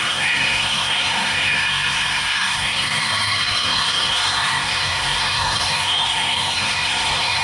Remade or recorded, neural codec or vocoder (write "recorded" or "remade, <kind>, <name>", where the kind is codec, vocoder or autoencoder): remade, codec, SNAC